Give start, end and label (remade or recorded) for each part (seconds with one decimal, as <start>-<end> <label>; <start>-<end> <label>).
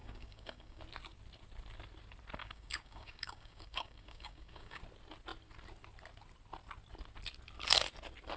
0.0-0.8 remade; 0.8-2.4 recorded; 2.4-4.8 remade; 4.8-8.4 recorded